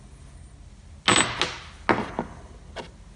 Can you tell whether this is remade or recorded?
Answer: recorded